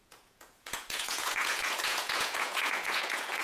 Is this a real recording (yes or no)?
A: no